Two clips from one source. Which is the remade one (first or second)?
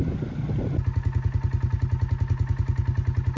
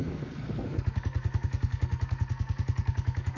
second